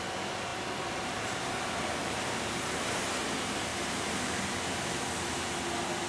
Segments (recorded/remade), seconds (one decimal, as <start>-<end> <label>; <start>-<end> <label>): 0.0-0.5 recorded; 0.5-1.2 remade; 1.2-2.0 recorded; 2.0-3.2 remade; 3.2-3.7 recorded; 3.7-5.0 remade; 5.0-6.1 recorded